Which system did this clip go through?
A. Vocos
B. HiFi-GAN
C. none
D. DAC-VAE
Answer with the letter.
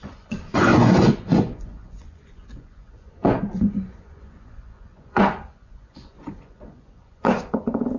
A